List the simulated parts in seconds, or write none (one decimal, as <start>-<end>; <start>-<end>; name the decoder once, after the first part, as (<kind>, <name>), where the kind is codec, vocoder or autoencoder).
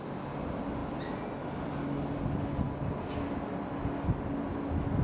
none